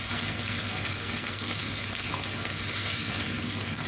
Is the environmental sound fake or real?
fake